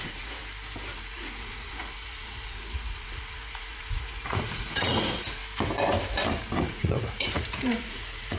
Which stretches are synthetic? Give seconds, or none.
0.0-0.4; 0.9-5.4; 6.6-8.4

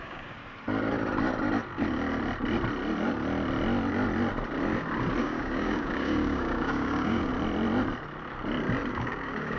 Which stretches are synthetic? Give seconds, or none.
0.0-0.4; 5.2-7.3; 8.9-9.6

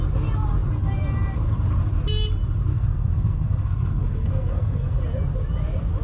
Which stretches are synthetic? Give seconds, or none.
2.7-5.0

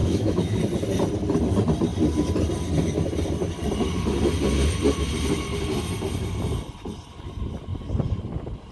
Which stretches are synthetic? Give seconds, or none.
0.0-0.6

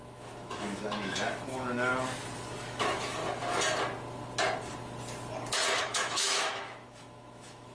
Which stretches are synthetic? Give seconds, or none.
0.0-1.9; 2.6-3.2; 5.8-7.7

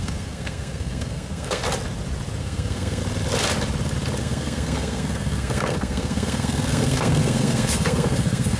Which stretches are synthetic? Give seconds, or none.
0.0-1.6; 2.4-3.0; 4.2-8.6

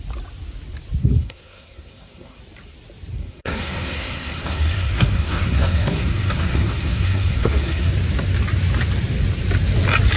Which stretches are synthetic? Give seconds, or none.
1.0-2.4; 3.2-7.9

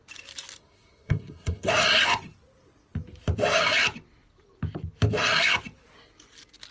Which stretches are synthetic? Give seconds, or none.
0.6-1.7